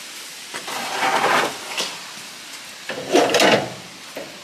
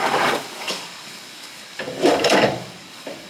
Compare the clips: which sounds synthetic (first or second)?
second